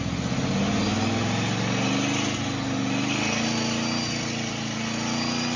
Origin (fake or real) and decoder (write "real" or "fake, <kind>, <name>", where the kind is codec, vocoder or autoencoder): real